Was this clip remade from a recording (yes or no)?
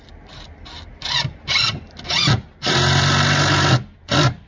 no